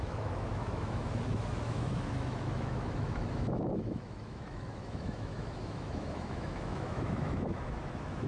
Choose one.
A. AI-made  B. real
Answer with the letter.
A